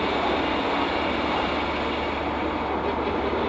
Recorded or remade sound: recorded